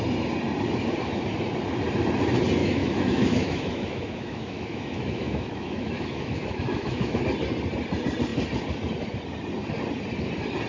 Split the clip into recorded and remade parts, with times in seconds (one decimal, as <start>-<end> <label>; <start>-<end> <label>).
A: 0.0-2.6 recorded; 2.6-7.2 remade; 7.2-10.7 recorded